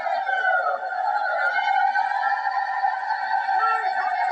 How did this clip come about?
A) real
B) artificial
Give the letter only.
A